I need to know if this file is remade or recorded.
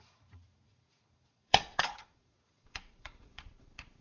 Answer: remade